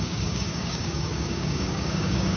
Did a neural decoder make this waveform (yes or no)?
yes